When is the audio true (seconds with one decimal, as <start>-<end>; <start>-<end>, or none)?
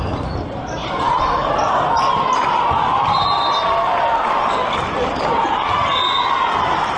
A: none